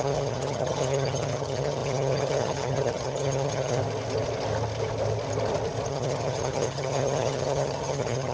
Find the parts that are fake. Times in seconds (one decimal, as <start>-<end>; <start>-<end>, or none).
0.0-3.8; 5.9-8.3